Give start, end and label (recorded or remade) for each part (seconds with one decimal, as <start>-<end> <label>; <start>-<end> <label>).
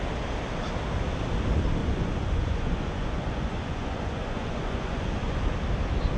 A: 0.0-1.8 recorded; 1.8-5.4 remade; 5.4-6.2 recorded